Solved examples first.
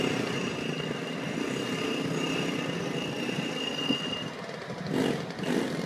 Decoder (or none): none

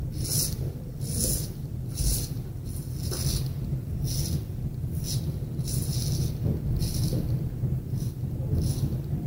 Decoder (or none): none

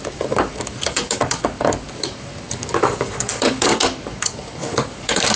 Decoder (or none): codec, DAC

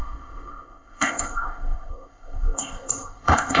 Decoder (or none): codec, ZipCodec